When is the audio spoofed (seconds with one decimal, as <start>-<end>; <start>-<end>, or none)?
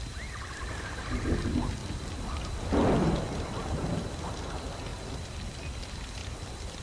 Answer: 6.2-6.8